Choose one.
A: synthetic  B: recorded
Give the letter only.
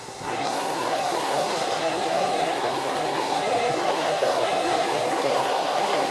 A